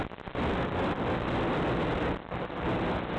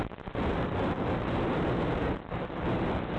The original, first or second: first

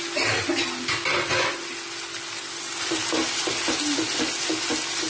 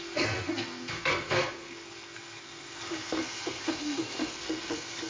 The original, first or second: first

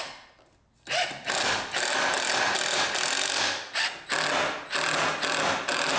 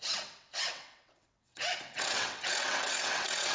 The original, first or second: first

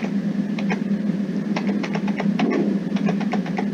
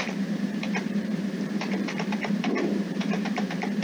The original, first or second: first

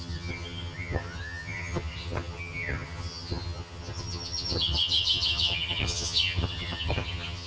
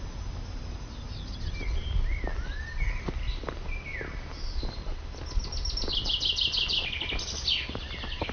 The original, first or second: second